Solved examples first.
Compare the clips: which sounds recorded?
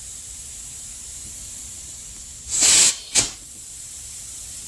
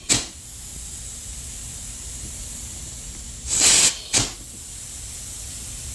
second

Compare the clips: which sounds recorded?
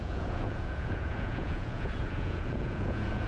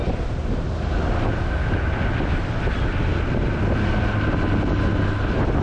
second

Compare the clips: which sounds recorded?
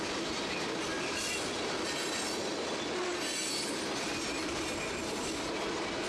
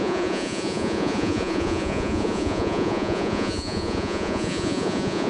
first